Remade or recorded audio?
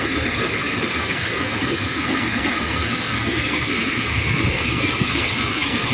remade